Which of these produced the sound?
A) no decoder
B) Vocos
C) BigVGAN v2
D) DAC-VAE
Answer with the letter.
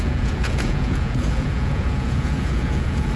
B